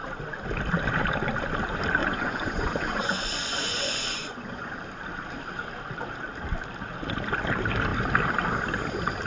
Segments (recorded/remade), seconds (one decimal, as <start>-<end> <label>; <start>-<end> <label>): 0.0-2.0 recorded; 2.0-4.7 remade; 4.7-9.3 recorded